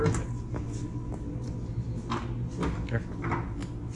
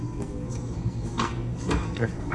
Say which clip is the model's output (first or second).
second